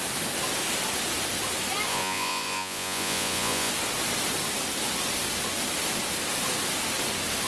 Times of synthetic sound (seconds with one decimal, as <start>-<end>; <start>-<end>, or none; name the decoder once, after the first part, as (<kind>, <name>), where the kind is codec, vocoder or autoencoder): 1.9-3.7 (vocoder, Vocos)